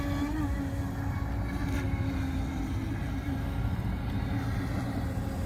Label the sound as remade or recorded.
recorded